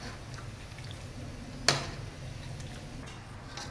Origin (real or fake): real